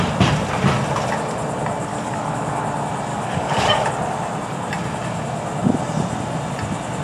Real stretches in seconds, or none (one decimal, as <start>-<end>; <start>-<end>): 0.0-1.9; 2.6-3.1; 3.9-7.0